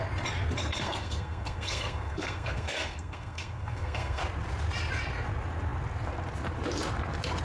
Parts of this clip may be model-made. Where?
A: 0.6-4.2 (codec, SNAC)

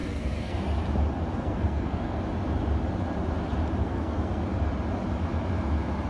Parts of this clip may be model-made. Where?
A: 0.0-0.6 (codec, SNAC); 1.3-2.2; 3.8-4.4

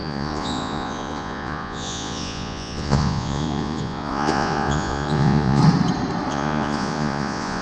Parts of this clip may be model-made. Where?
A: 0.0-5.6 (vocoder, Vocos); 6.3-7.6

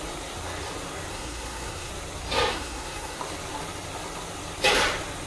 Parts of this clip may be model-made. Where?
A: 1.1-1.9 (codec, SNAC); 2.5-3.2

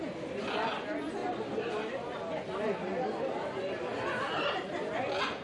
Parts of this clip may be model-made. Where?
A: none

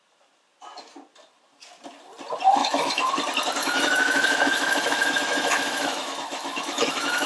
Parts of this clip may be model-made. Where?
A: 2.6-3.1 (autoencoder, DAC-VAE); 3.6-7.3

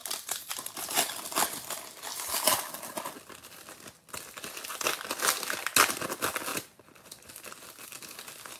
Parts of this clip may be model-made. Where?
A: 0.0-0.8 (vocoder, BigVGAN v2); 6.5-7.3

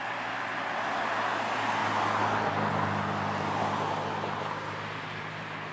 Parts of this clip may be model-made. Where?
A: none